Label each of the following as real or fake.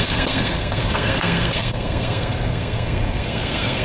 fake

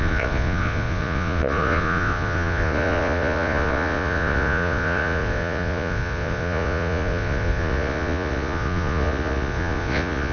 fake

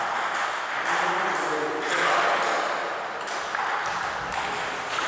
real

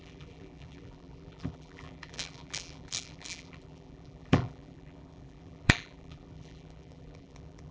fake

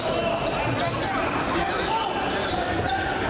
real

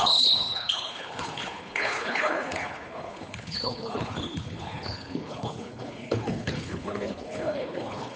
fake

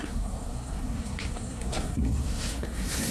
fake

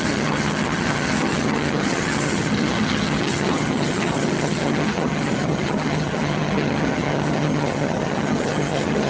fake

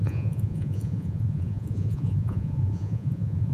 fake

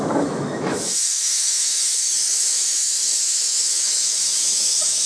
fake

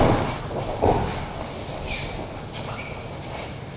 real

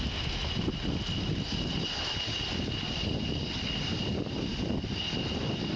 real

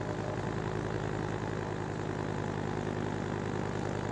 real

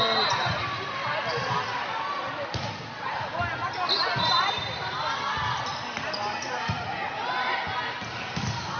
real